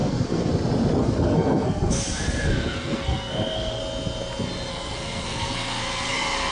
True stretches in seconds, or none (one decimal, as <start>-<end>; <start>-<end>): 0.5-1.0; 3.8-4.7